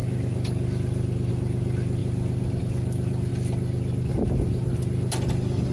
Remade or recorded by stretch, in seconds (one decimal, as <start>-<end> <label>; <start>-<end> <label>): 0.0-5.7 recorded